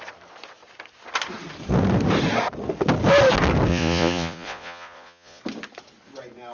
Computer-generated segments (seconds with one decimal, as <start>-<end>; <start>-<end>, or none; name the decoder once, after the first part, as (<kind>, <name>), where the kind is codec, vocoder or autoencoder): 3.7-5.4 (vocoder, Vocos)